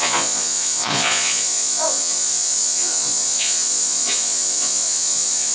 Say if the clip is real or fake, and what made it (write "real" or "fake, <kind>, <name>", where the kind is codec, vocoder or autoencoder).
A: fake, vocoder, Vocos